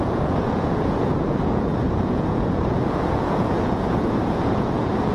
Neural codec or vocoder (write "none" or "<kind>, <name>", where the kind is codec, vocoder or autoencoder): vocoder, Vocos